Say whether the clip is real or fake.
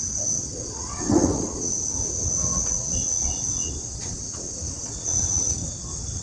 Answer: fake